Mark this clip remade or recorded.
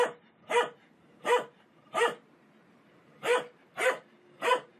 remade